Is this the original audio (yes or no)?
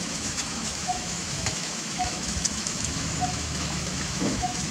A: no